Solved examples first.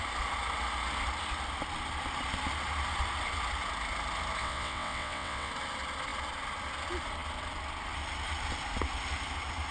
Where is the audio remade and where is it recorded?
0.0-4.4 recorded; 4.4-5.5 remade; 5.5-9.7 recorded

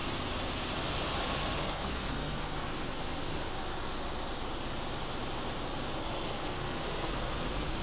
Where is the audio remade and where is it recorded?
0.0-1.2 recorded; 1.2-3.5 remade; 3.5-6.0 recorded; 6.0-7.8 remade